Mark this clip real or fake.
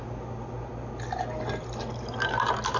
real